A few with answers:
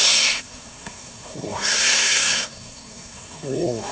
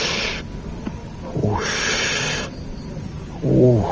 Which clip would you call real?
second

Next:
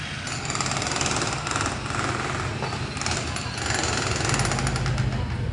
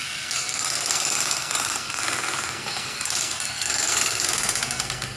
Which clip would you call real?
first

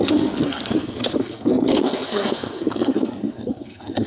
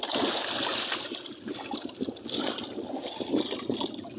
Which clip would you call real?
second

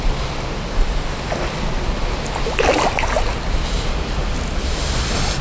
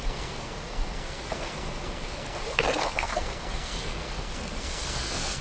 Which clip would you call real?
first